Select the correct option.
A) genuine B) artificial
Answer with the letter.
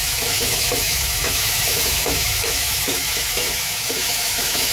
B